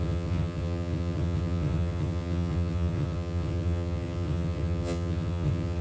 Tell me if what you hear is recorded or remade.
remade